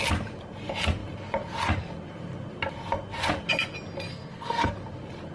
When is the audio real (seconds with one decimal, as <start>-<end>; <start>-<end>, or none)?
0.0-4.1; 4.7-5.3